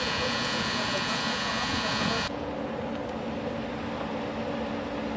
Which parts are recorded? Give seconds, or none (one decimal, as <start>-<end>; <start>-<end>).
2.5-5.2